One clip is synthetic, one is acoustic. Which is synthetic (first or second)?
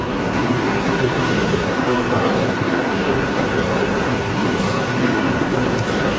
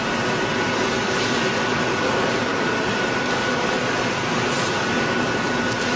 first